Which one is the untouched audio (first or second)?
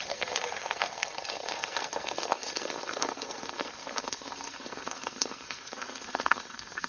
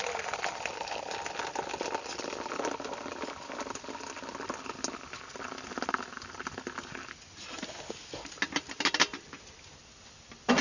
second